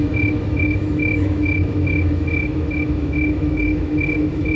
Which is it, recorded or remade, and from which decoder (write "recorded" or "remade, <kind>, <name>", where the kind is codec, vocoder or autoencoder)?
remade, autoencoder, DAC-VAE